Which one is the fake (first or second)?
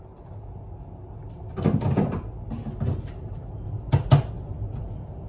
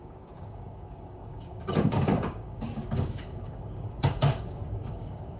second